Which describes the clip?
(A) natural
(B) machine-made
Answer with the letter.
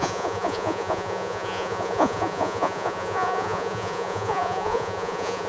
B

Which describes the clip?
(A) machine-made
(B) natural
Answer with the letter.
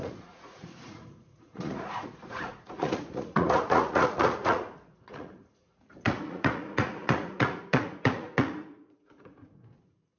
A